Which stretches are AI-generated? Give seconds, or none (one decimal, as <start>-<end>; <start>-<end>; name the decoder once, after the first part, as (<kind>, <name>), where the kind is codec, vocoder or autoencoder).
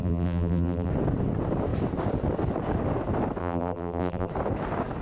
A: 0.0-0.9 (vocoder, BigVGAN v2); 3.4-4.3